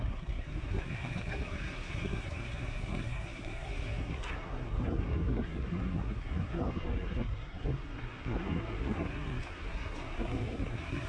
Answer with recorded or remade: remade